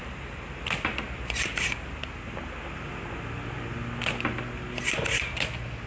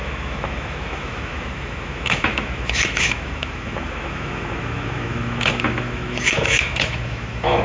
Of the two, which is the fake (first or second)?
second